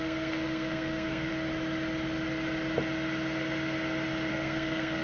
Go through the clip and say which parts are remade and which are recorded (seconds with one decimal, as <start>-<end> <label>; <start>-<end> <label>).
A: 0.0-1.3 remade; 1.3-4.3 recorded; 4.3-5.0 remade